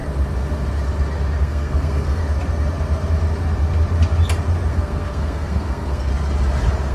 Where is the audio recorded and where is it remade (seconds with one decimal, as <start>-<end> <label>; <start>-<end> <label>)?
0.0-1.4 recorded; 1.4-2.2 remade; 2.2-4.7 recorded; 4.7-6.1 remade; 6.1-6.9 recorded